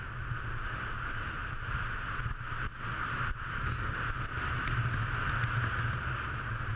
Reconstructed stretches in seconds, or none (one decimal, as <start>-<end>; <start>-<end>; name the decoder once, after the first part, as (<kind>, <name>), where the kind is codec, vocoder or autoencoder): none

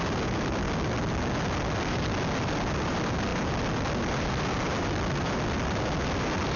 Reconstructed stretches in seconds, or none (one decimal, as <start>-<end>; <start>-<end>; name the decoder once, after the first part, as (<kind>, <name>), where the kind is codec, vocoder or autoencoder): 0.0-6.6 (vocoder, BigVGAN v2)

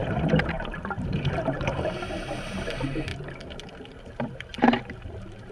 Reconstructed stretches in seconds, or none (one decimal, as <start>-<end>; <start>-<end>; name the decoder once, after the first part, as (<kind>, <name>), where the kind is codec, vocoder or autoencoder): 0.0-3.1 (vocoder, BigVGAN v2); 4.0-5.5

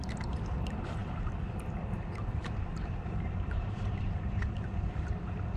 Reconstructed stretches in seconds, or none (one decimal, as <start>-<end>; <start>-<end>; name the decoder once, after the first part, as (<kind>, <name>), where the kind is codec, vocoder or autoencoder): 1.0-4.4 (vocoder, BigVGAN v2)